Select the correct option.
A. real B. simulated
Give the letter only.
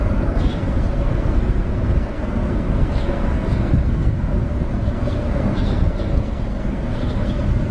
B